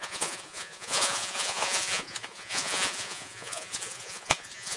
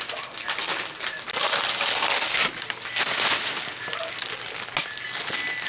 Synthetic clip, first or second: first